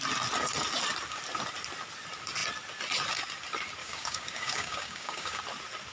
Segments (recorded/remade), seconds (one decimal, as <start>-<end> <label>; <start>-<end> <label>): 0.0-3.8 recorded; 3.8-5.4 remade; 5.4-5.9 recorded